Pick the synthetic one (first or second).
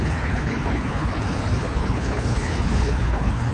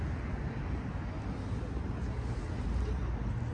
first